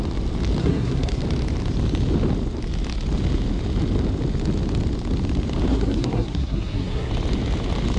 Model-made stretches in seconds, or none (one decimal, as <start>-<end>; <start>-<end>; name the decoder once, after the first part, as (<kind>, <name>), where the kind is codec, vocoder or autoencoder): 0.6-1.2 (codec, SNAC); 5.7-7.1